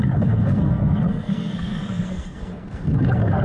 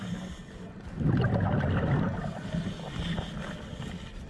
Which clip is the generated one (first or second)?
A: first